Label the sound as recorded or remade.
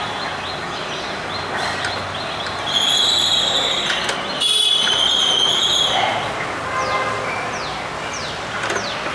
recorded